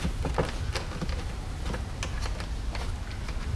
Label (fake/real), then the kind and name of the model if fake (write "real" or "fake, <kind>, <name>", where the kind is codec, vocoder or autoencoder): real